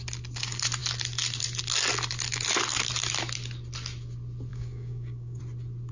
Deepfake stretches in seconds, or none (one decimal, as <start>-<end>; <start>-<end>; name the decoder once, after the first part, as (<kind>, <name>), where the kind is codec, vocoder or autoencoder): 4.5-5.4 (codec, DAC)